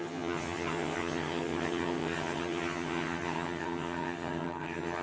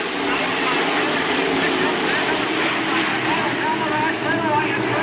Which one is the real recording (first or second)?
second